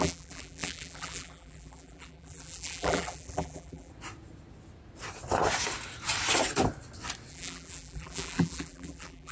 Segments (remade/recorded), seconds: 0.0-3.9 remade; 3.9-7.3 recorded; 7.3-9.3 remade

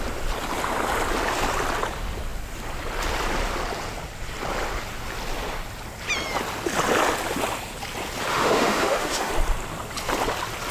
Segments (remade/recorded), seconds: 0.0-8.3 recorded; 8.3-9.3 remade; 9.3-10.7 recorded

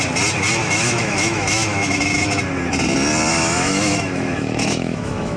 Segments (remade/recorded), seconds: 0.0-0.6 recorded; 0.6-2.4 remade; 2.4-3.3 recorded; 3.3-5.4 remade

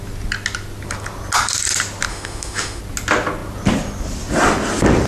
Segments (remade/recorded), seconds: 0.0-2.1 recorded; 2.1-2.8 remade; 2.8-5.1 recorded

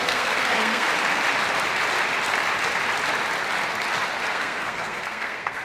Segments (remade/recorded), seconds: 0.0-0.9 remade; 0.9-4.3 recorded; 4.3-5.6 remade

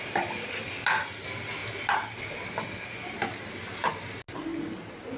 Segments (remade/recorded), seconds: 0.0-5.2 recorded

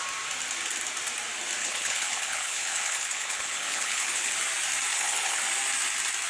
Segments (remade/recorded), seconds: 0.0-1.6 recorded; 1.6-4.3 remade; 4.3-4.9 recorded; 4.9-5.4 remade; 5.4-6.3 recorded